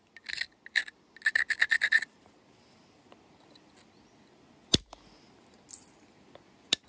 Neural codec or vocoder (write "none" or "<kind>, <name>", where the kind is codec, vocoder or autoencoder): none